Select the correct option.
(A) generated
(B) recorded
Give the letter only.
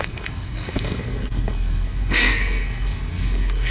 A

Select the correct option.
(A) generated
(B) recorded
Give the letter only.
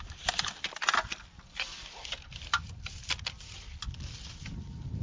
B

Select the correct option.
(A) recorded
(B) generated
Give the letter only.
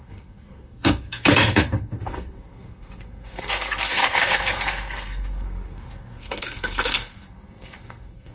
B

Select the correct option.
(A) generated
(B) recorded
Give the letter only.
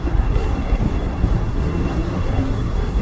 A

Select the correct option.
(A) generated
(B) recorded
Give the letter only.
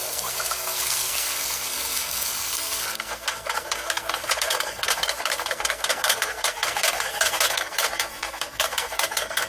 A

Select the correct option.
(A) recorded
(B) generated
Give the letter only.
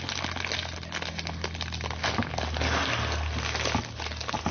A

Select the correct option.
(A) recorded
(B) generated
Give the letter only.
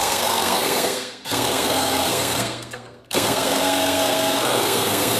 B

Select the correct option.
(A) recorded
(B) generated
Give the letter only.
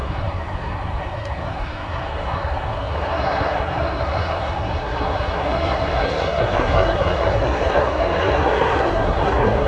B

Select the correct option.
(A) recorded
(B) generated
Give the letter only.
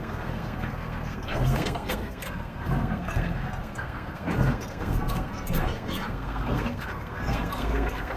B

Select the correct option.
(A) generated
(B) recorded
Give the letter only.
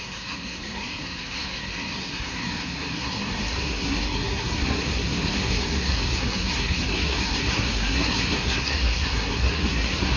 A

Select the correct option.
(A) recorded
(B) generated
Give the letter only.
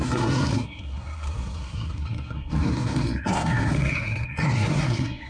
B